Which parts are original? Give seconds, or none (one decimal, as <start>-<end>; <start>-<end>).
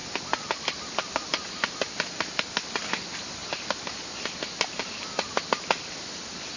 0.0-6.6